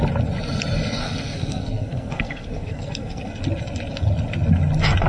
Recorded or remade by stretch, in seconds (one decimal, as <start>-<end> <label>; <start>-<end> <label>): 0.0-1.0 recorded; 1.0-3.4 remade; 3.4-5.1 recorded